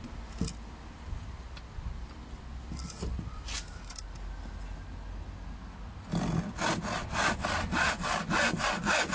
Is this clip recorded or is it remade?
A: recorded